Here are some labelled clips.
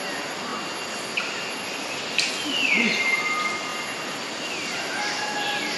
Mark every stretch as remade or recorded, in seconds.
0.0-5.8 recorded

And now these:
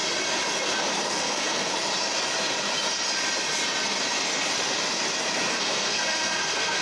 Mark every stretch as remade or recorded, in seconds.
0.0-1.2 recorded; 1.2-1.7 remade; 1.7-5.5 recorded; 5.5-6.8 remade

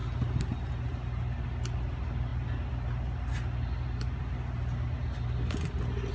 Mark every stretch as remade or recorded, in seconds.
0.0-6.1 recorded

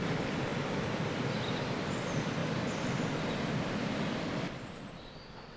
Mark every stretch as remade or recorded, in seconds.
0.0-5.6 remade

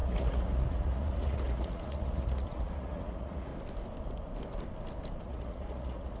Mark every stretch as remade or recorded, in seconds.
0.0-3.5 remade; 3.5-5.2 recorded; 5.2-6.2 remade